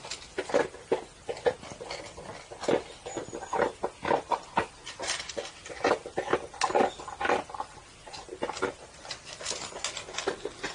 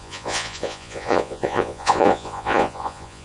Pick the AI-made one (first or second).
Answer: second